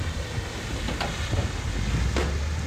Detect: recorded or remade recorded